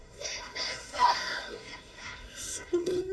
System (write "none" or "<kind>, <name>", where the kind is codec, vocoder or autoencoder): codec, SNAC